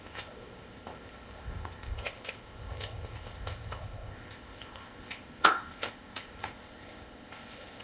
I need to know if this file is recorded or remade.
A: remade